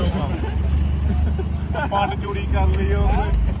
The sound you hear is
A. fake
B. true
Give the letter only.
B